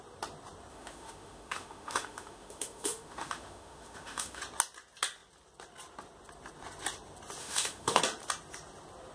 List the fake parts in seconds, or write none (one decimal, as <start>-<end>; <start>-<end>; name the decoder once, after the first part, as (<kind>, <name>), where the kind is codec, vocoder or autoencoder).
0.7-4.4 (autoencoder, DAC-VAE); 7.4-8.0